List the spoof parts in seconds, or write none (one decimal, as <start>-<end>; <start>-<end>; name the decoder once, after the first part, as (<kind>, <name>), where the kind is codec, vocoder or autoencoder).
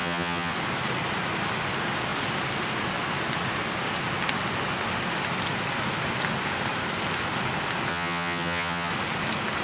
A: 0.0-0.5 (vocoder, HiFi-GAN); 7.9-8.9